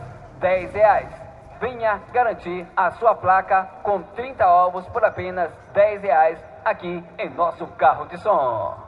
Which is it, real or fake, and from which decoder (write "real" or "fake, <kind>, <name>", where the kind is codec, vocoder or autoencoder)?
real